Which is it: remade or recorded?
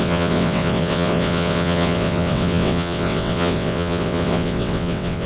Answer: remade